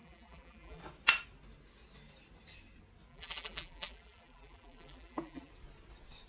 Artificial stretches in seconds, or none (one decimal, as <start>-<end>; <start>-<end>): 0.0-0.8; 3.1-5.5